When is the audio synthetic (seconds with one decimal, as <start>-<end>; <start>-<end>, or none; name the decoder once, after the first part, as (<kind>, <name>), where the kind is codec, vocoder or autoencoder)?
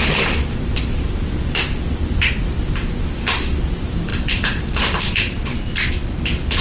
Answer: 4.1-5.9 (vocoder, BigVGAN v2)